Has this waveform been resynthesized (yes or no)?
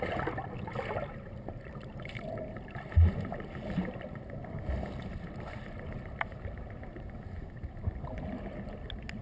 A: no